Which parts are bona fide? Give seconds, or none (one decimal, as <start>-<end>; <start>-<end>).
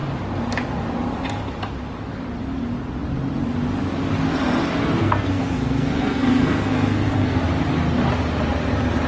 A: 0.0-5.0; 7.4-9.1